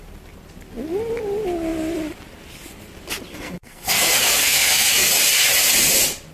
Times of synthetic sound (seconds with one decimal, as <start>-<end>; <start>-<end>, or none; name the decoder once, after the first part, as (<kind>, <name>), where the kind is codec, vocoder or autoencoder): 3.3-5.1 (codec, SNAC)